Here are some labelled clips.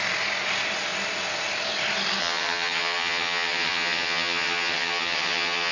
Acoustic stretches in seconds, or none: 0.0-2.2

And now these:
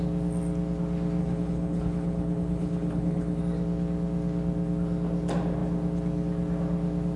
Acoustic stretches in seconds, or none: 0.0-1.2; 3.4-7.2

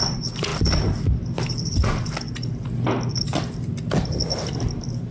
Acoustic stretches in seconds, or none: 0.0-5.1